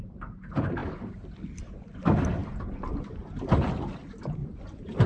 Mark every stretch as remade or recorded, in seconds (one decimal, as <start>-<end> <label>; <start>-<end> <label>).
0.0-0.8 recorded; 0.8-2.0 remade; 2.0-2.4 recorded; 2.4-3.3 remade; 3.3-4.4 recorded; 4.4-5.1 remade